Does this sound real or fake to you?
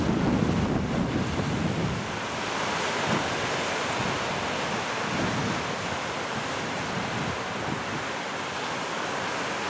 real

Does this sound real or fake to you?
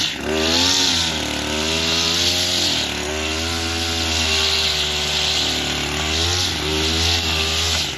real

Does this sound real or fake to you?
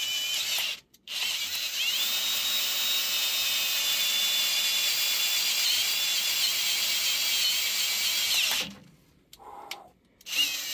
real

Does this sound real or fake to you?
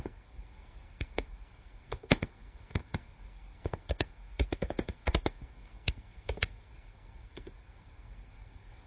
fake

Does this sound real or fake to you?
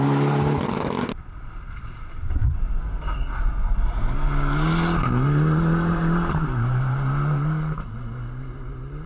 real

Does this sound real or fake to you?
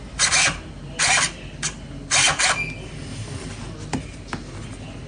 real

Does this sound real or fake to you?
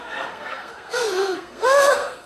fake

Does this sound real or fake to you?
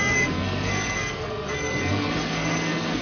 fake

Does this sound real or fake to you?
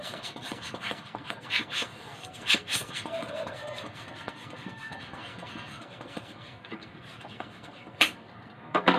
fake